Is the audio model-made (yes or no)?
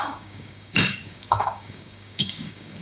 yes